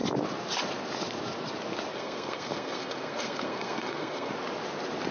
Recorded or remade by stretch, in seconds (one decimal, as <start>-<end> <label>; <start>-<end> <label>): 0.0-1.9 recorded; 1.9-4.3 remade; 4.3-5.1 recorded